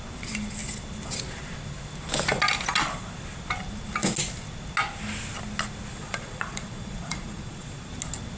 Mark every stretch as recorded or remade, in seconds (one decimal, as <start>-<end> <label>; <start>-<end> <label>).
0.0-5.9 recorded; 5.9-7.9 remade; 7.9-8.4 recorded